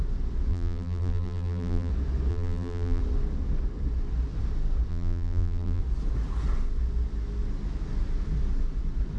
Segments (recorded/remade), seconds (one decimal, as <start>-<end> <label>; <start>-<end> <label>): 0.0-0.5 recorded; 0.5-1.9 remade; 1.9-2.3 recorded; 2.3-3.0 remade; 3.0-4.9 recorded; 4.9-5.8 remade; 5.8-9.2 recorded